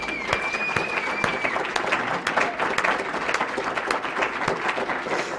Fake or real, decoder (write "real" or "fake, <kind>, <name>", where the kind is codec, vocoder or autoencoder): real